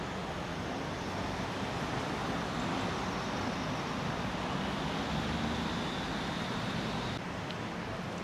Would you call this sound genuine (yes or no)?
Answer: yes